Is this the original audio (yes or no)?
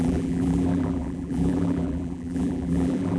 no